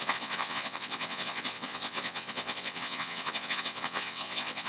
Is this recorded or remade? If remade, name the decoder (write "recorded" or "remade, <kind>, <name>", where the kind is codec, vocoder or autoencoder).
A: remade, vocoder, WaveNeXt